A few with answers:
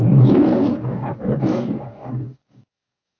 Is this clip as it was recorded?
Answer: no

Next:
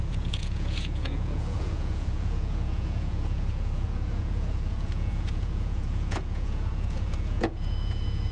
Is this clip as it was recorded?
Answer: no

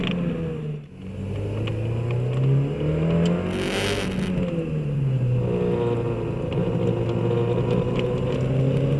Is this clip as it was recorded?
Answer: yes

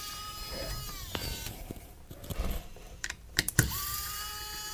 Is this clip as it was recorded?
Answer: no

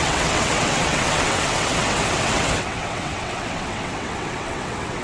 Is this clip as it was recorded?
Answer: no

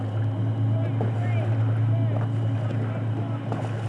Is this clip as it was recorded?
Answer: yes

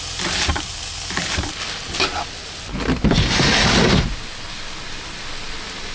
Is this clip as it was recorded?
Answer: yes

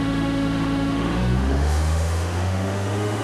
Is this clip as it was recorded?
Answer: no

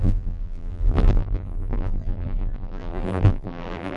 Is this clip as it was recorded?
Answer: no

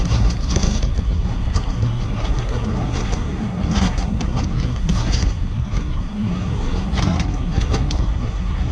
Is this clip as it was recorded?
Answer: no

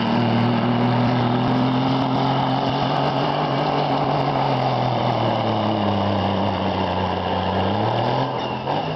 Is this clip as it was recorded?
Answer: yes